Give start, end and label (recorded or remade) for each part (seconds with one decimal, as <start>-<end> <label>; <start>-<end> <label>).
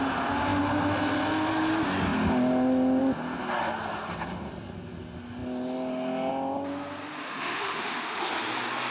0.0-7.2 recorded; 7.2-8.3 remade; 8.3-8.9 recorded